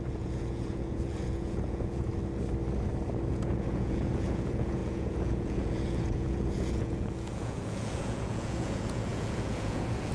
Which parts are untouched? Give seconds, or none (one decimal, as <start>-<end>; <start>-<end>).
2.1-3.3